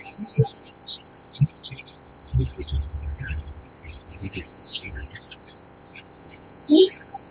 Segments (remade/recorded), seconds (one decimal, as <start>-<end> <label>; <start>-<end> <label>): 0.0-0.7 remade; 0.7-4.1 recorded; 4.1-5.0 remade; 5.0-6.2 recorded; 6.2-7.3 remade